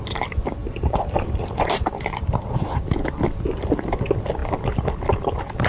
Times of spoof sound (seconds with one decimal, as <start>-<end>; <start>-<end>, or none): 0.6-2.8